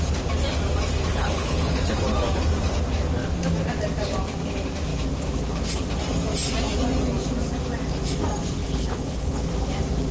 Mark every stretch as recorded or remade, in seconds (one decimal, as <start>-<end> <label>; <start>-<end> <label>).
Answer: 0.0-1.1 recorded; 1.1-1.8 remade; 1.8-8.6 recorded; 8.6-9.5 remade; 9.5-10.1 recorded